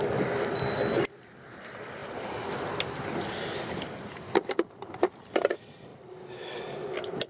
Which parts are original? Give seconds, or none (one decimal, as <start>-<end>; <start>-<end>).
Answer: 0.0-5.9; 6.6-7.3